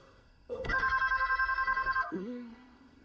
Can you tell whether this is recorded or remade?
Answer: remade